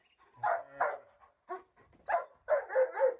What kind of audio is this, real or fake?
real